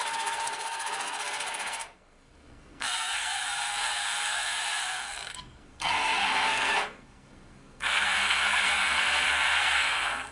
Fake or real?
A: fake